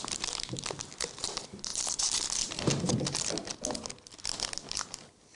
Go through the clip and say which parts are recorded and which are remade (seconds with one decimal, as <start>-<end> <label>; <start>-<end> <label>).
0.0-5.4 recorded